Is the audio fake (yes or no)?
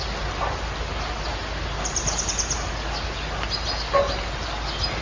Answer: no